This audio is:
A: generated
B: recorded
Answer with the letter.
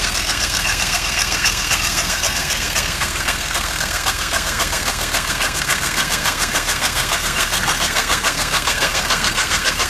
A